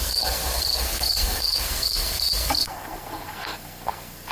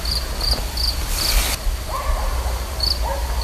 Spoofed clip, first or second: first